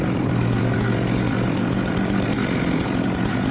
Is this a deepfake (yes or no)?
yes